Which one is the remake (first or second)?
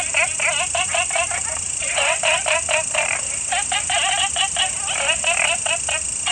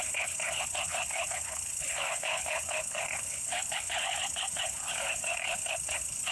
second